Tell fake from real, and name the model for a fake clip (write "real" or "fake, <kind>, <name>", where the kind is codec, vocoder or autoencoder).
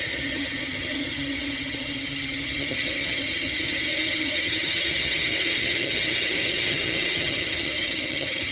fake, vocoder, HiFi-GAN